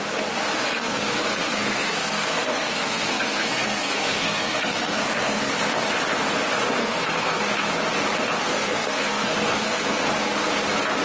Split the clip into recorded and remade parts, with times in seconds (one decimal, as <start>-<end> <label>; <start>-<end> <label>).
0.0-0.6 recorded; 0.6-5.5 remade; 5.5-6.8 recorded; 6.8-7.4 remade; 7.4-8.4 recorded; 8.4-10.1 remade; 10.1-11.0 recorded